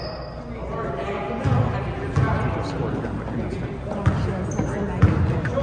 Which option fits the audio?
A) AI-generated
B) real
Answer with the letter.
B